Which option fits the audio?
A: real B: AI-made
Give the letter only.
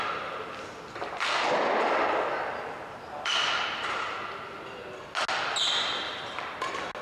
A